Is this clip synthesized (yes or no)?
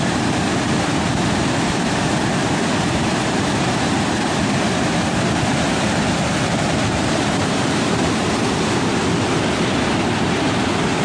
yes